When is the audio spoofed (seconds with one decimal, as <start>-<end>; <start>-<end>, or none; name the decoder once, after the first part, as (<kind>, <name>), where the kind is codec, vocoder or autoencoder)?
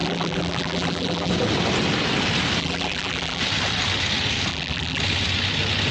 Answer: 0.0-1.3 (vocoder, BigVGAN v2); 2.6-3.4; 4.5-5.0